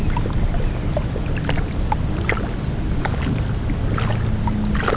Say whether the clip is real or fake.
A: real